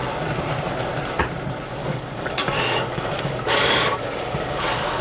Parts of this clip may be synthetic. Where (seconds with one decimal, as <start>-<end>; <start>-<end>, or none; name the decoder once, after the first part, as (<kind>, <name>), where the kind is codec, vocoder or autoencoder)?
1.8-5.0 (codec, DAC)